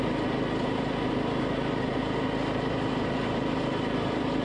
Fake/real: real